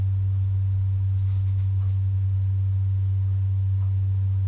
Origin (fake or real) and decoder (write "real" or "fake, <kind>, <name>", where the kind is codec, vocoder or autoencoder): real